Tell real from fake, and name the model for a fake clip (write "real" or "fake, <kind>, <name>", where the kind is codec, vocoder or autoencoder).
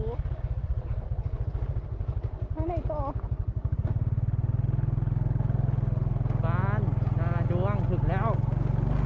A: real